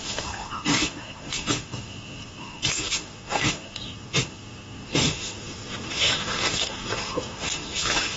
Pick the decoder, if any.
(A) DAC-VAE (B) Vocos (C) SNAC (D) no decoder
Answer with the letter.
A